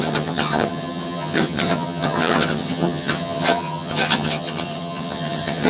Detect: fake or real fake